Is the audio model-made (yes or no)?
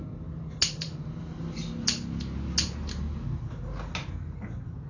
no